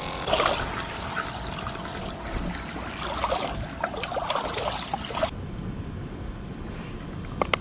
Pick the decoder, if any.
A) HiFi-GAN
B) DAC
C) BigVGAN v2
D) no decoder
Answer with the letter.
D